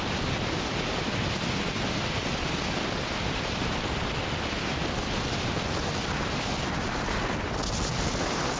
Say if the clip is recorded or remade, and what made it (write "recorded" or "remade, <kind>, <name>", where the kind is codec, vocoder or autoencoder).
recorded